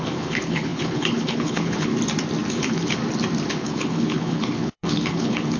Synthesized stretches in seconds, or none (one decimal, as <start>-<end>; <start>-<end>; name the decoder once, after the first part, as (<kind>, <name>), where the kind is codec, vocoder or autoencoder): 0.0-1.9 (codec, HILCodec); 2.5-3.0; 3.5-5.6